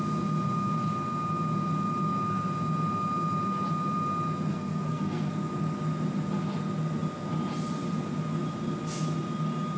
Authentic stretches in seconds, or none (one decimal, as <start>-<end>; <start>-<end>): 0.0-4.5; 5.3-9.8